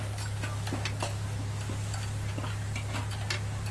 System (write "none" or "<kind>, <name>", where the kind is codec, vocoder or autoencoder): none